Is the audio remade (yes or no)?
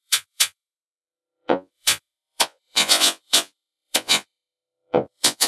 yes